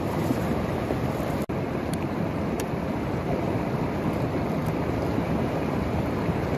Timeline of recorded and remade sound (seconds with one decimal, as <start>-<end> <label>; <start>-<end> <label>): 0.0-4.6 remade; 4.6-5.3 recorded; 5.3-6.6 remade